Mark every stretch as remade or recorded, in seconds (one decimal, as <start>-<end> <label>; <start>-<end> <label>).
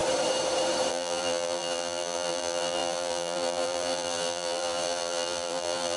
0.0-0.9 recorded; 0.9-6.0 remade